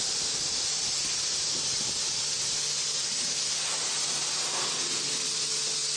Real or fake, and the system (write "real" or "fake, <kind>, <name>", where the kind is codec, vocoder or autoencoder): fake, vocoder, BigVGAN v2